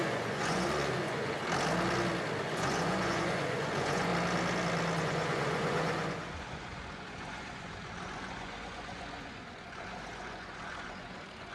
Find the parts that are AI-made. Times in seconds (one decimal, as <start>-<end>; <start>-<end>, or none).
0.0-1.4; 2.4-4.1; 5.0-11.5